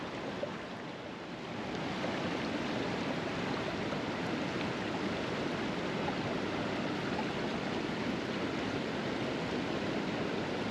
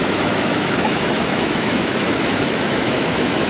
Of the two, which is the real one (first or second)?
first